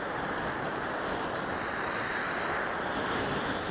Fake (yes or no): no